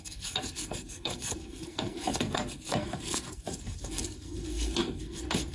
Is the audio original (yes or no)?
no